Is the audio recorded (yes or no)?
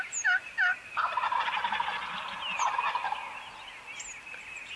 yes